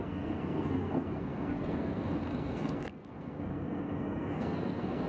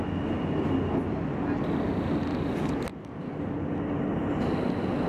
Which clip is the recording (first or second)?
second